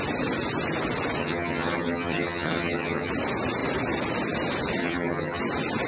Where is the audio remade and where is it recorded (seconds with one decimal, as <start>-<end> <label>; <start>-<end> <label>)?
0.0-1.2 recorded; 1.2-3.1 remade; 3.1-4.8 recorded; 4.8-5.4 remade; 5.4-5.9 recorded

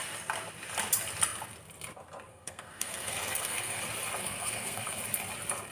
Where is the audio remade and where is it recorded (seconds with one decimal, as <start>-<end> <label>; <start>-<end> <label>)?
0.0-2.3 recorded; 2.3-3.8 remade; 3.8-4.2 recorded; 4.2-5.0 remade; 5.0-5.7 recorded

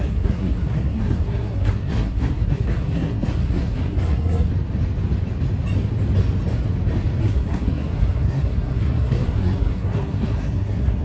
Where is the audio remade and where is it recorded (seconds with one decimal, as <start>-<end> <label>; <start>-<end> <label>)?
0.0-4.5 remade; 4.5-7.2 recorded; 7.2-11.0 remade

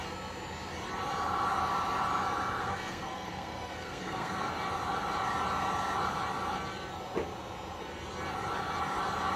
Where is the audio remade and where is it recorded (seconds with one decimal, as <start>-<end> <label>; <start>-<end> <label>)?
0.0-2.6 recorded; 2.6-4.5 remade; 4.5-9.4 recorded